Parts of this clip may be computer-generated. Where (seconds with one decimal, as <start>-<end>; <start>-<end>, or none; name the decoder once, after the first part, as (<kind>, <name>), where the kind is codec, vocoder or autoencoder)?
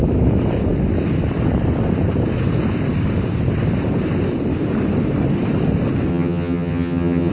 6.1-7.3 (vocoder, HiFi-GAN)